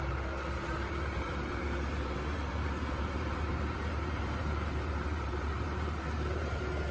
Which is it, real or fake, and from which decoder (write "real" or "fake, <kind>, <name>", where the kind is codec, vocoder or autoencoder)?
fake, vocoder, BigVGAN v2